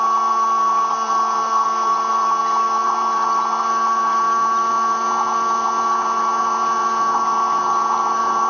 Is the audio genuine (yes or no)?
yes